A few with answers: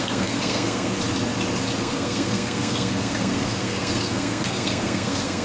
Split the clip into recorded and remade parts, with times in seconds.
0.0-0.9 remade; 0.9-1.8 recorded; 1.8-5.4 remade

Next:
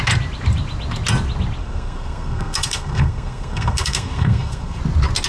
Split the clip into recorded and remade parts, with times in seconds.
0.0-1.6 recorded; 1.6-4.8 remade; 4.8-5.3 recorded